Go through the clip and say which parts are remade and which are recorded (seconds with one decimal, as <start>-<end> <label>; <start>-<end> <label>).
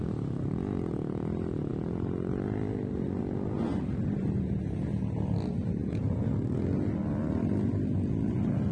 0.0-5.8 recorded; 5.8-6.3 remade; 6.3-8.7 recorded